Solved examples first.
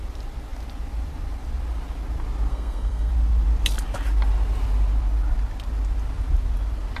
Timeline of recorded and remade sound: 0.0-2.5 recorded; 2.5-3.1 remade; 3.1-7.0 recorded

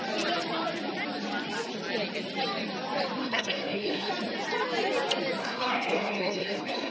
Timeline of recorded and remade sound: 0.0-3.2 recorded; 3.2-4.1 remade; 4.1-5.4 recorded; 5.4-6.9 remade

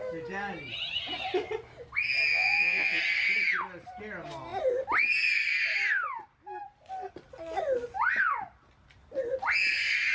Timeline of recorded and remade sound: 0.0-2.3 recorded; 2.3-3.0 remade; 3.0-10.1 recorded

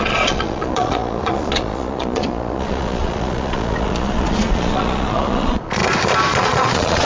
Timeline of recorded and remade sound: 0.0-5.8 remade; 5.8-6.4 recorded; 6.4-7.0 remade

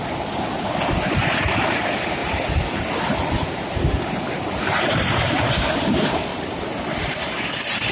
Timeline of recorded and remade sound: 0.0-0.9 recorded; 0.9-7.9 remade